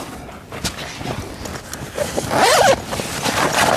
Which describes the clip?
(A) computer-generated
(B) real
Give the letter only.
B